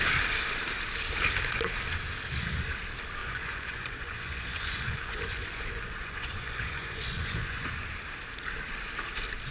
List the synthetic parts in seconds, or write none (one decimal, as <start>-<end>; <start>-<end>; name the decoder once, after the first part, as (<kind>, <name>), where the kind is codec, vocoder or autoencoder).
3.2-7.7 (vocoder, Vocos)